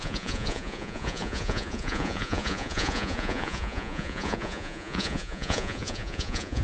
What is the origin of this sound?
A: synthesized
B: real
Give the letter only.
A